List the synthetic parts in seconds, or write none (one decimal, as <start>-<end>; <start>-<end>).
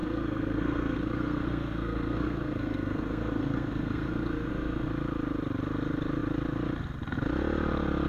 0.0-4.9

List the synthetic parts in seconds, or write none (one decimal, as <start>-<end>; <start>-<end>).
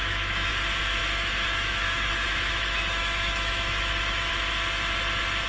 0.0-0.5; 1.0-4.3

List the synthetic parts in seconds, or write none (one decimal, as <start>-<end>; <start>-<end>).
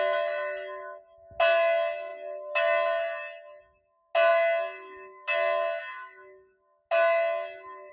none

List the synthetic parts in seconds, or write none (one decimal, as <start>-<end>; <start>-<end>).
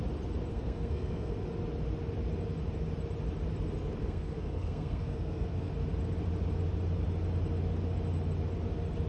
0.5-1.4; 4.0-5.7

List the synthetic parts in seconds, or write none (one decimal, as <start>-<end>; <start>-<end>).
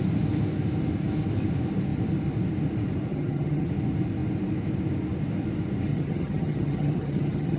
3.1-3.7; 5.9-7.6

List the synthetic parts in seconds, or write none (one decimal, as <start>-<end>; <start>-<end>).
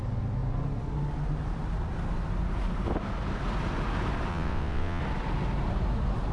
4.3-5.0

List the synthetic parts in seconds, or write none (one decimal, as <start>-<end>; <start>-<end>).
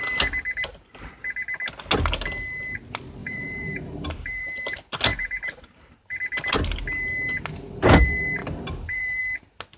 3.2-4.6; 5.1-6.2; 8.4-9.2